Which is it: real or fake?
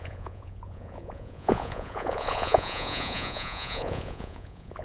fake